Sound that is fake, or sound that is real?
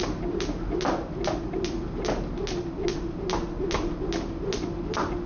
real